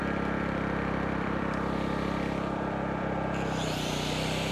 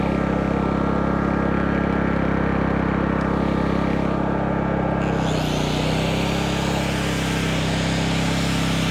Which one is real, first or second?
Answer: second